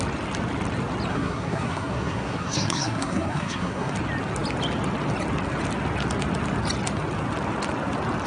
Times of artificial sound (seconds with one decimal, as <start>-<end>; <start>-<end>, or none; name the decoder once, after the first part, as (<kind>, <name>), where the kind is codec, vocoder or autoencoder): 1.1-3.9 (codec, SNAC)

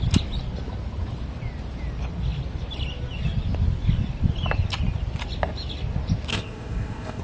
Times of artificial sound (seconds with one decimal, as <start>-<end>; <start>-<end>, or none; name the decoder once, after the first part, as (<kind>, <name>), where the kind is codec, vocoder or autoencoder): 6.3-7.2 (codec, ZipCodec)

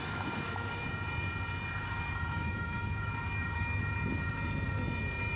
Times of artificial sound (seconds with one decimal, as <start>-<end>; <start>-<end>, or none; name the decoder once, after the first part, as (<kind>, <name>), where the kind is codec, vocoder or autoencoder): 0.0-0.9 (autoencoder, DAC-VAE); 1.8-3.8

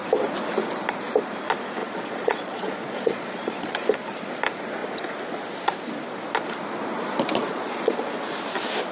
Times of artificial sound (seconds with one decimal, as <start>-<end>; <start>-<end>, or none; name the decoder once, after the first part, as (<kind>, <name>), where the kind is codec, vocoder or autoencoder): 1.8-3.6 (vocoder, Vocos); 7.5-8.0

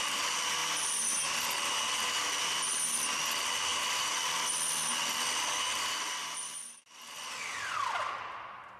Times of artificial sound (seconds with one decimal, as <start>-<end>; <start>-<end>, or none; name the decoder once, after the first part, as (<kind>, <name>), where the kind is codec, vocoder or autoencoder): none

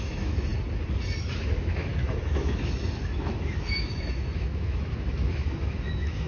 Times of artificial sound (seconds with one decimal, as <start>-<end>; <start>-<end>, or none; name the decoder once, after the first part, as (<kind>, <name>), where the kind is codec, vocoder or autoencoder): 0.0-0.5 (autoencoder, DAC-VAE); 1.2-6.3